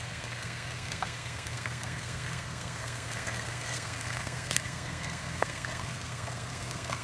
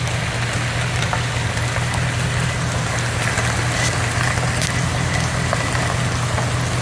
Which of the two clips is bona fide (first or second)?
second